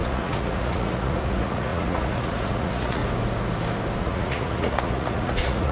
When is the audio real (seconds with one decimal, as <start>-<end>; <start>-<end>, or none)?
3.0-4.0